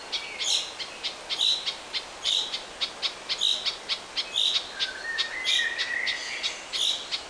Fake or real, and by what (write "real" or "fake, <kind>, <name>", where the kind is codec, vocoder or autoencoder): real